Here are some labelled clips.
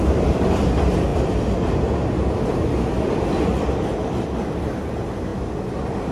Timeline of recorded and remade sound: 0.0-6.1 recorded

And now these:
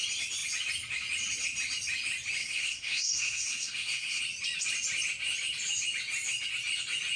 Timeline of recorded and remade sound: 0.0-2.4 recorded; 2.4-4.2 remade; 4.2-7.2 recorded

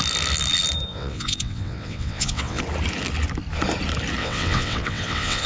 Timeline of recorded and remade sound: 0.0-0.9 recorded; 0.9-2.6 remade; 2.6-4.2 recorded; 4.2-5.5 remade

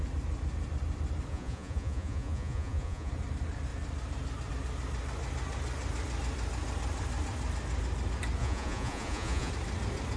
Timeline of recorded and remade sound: 0.0-1.3 recorded; 1.3-3.1 remade; 3.1-8.4 recorded; 8.4-9.5 remade; 9.5-10.2 recorded

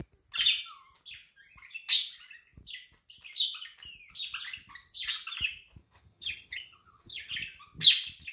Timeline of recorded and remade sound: 0.0-5.8 recorded; 5.8-7.3 remade; 7.3-8.3 recorded

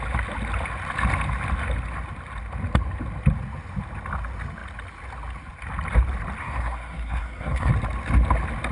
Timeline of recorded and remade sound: 0.0-6.4 recorded; 6.4-7.7 remade; 7.7-8.7 recorded